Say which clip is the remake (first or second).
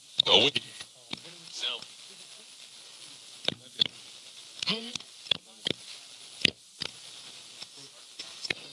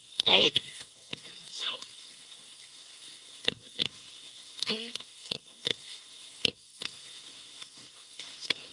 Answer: second